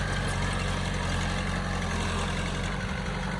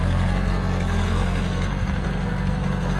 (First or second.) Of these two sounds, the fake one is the second